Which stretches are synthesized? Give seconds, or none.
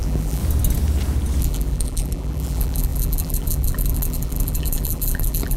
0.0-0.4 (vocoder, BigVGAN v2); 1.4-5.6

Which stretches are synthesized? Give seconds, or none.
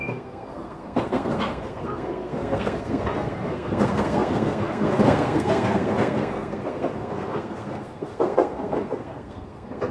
0.0-9.9 (codec, SNAC)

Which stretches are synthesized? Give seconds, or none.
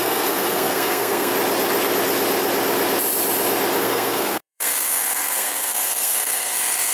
0.0-1.3 (codec, SNAC); 3.8-6.9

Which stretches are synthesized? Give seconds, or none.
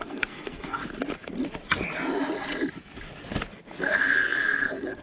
0.0-0.8 (codec, SNAC); 3.8-5.0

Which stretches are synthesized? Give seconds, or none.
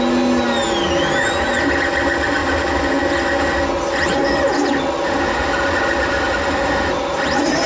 none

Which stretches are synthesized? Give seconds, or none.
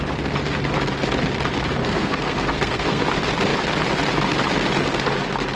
1.8-3.0 (codec, SNAC)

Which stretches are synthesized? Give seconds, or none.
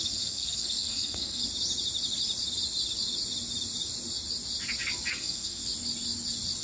0.0-1.4 (codec, SNAC); 5.1-5.6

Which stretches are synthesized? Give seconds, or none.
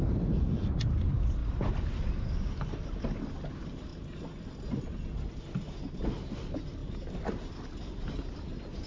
none